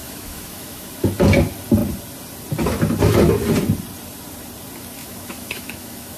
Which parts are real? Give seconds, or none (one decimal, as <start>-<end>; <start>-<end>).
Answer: 0.9-5.0